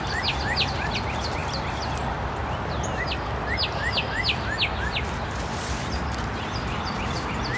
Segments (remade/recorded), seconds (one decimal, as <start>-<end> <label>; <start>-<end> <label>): 0.0-7.6 recorded